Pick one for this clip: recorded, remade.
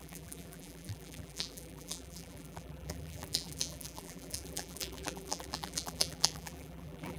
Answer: remade